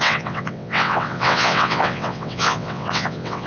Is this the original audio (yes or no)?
no